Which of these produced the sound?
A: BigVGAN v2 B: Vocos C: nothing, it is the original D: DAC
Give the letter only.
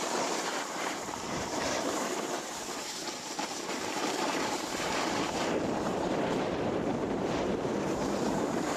A